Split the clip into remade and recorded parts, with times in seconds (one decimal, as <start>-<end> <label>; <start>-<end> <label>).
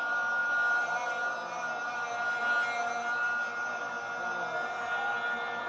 0.0-5.7 recorded